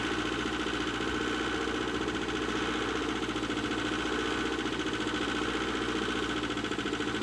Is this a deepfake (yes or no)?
no